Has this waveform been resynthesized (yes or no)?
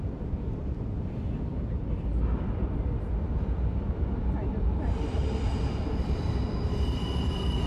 no